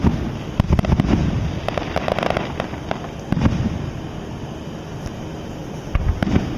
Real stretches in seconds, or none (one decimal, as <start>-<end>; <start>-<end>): 0.0-1.2; 5.1-5.6